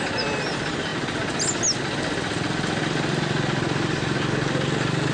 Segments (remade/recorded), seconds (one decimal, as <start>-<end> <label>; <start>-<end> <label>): 0.0-5.1 recorded